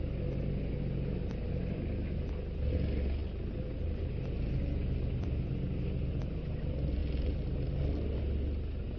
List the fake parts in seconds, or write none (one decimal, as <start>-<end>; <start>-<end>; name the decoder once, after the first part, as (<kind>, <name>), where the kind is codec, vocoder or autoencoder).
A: 3.2-4.0 (vocoder, BigVGAN v2); 7.0-7.7